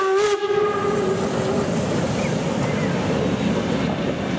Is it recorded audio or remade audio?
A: recorded